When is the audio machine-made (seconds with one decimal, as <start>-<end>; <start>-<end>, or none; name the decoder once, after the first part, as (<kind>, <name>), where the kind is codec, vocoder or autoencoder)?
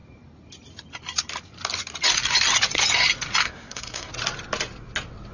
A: 3.4-4.1 (codec, SNAC)